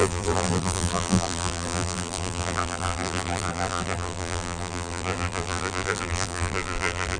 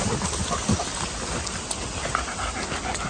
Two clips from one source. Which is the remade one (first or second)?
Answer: first